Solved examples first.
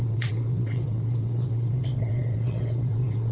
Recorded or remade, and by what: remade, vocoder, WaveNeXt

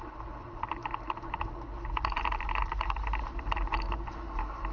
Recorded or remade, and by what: remade, vocoder, BigVGAN v2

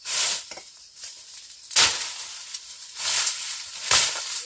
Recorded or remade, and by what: recorded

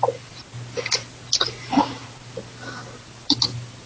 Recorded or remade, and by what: recorded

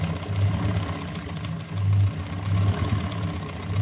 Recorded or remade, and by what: recorded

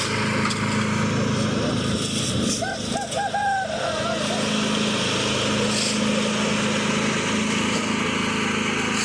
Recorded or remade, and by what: recorded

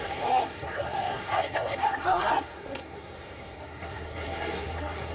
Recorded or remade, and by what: remade, codec, SNAC